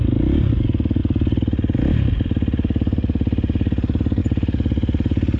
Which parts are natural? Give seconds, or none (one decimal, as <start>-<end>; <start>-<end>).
0.0-5.4